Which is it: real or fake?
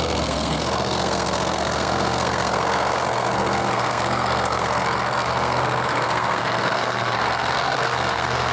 fake